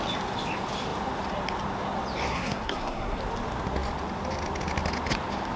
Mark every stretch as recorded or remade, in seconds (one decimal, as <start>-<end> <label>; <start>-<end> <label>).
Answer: 0.0-2.3 recorded; 2.3-3.2 remade; 3.2-5.6 recorded